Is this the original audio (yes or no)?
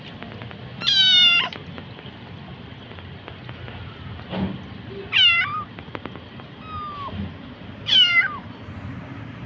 yes